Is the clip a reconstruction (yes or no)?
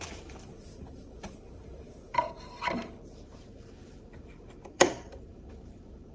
yes